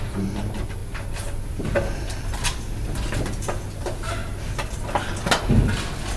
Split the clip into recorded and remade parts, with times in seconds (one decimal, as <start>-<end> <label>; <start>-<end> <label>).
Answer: 0.0-0.8 recorded; 0.8-4.5 remade; 4.5-6.2 recorded